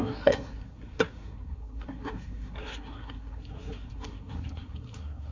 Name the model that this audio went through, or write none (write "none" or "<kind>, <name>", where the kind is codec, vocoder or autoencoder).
codec, SNAC